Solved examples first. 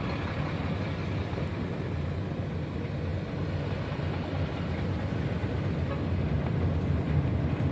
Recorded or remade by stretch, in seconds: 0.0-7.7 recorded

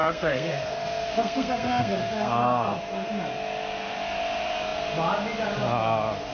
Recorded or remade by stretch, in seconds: 0.0-3.1 remade; 3.1-6.3 recorded

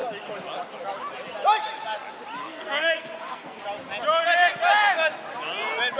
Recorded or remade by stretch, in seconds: 0.0-2.4 recorded; 2.4-3.6 remade; 3.6-6.0 recorded

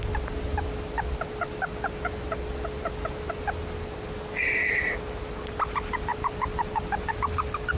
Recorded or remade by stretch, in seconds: 0.0-7.8 recorded